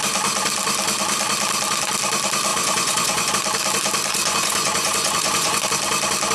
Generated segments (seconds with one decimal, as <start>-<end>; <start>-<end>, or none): 2.5-3.3; 4.1-5.6